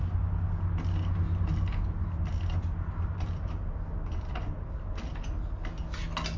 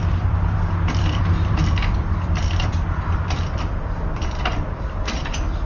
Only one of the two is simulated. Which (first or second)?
second